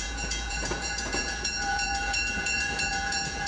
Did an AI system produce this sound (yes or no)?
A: yes